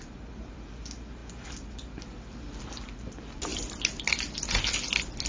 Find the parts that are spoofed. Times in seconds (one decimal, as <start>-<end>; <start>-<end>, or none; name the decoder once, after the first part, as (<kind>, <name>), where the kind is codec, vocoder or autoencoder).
none